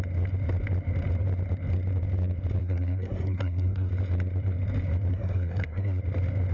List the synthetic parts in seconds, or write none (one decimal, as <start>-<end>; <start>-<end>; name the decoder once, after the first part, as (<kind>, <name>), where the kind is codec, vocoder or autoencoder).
2.6-3.9 (codec, SNAC); 5.1-6.0